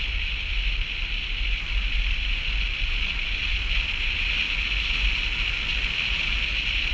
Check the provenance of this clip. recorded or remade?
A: recorded